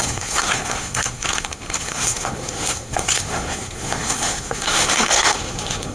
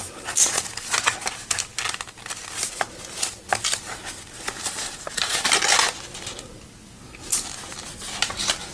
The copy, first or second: first